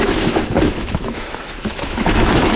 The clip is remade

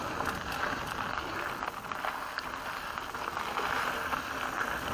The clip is recorded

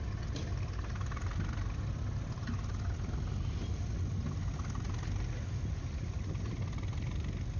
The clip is recorded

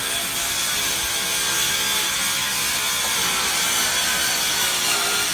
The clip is recorded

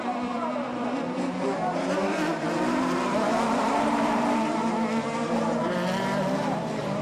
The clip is remade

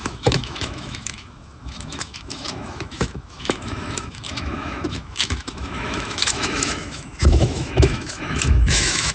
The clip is remade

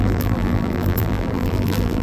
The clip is remade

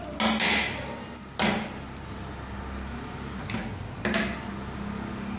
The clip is recorded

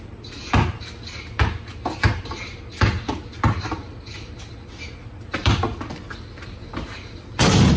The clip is recorded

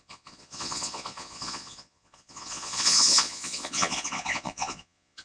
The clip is remade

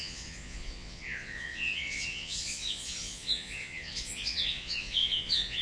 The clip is remade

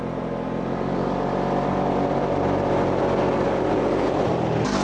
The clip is recorded